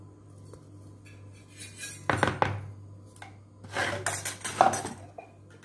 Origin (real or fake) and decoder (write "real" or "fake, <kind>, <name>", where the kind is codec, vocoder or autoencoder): real